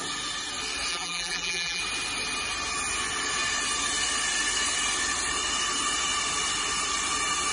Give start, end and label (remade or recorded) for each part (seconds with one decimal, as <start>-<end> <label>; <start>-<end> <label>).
0.0-0.9 recorded; 0.9-1.8 remade; 1.8-7.5 recorded